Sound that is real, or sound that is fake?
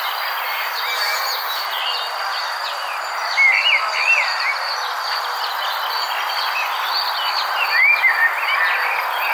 real